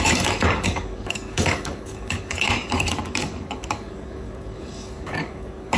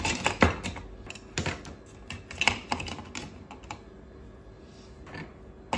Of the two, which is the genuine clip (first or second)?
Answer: second